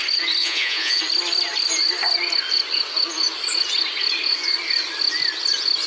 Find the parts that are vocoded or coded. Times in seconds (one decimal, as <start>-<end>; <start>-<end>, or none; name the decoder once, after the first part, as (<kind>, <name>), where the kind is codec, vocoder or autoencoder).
0.4-1.0 (vocoder, Vocos)